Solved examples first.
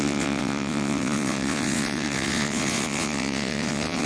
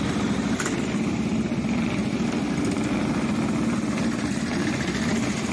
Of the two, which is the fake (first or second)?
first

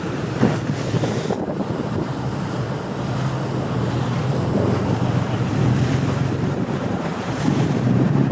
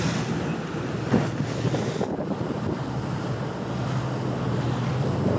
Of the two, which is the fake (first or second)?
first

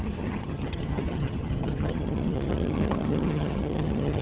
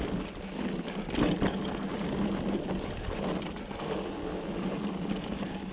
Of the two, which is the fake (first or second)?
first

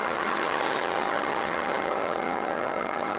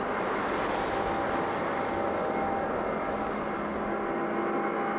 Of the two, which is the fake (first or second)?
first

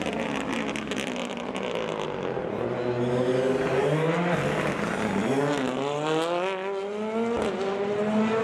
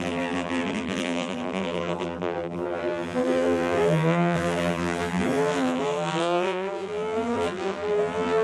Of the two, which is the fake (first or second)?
second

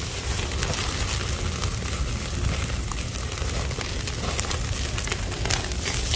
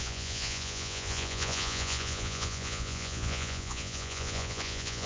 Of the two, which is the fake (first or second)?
second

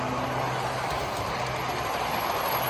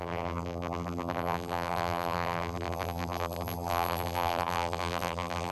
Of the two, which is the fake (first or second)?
second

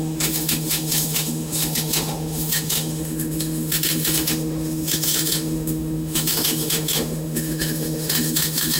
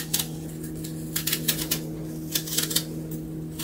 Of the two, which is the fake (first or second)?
first